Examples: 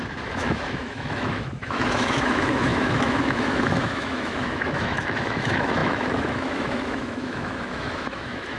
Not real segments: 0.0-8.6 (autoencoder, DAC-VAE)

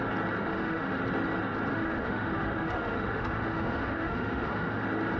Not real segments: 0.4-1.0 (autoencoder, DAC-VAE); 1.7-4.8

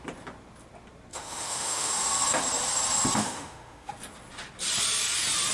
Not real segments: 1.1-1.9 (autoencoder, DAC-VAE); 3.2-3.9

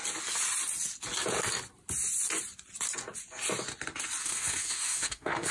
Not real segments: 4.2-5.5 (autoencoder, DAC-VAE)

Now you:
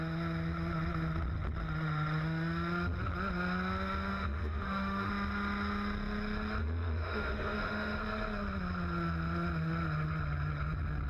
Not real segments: 4.1-5.1 (autoencoder, DAC-VAE); 6.6-8.0

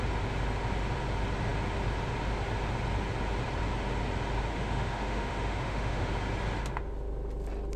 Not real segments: 4.5-6.1 (autoencoder, DAC-VAE)

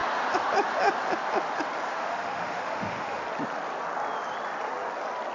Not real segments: 2.0-3.2 (autoencoder, DAC-VAE)